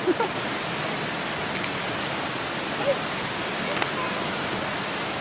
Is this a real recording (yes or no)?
yes